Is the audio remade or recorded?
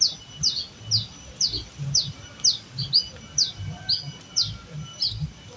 recorded